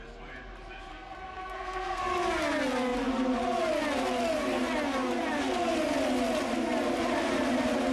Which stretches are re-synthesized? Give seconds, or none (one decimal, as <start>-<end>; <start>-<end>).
0.9-2.0